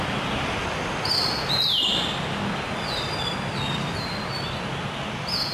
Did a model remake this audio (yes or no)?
no